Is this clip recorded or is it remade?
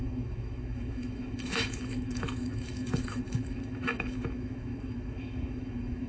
remade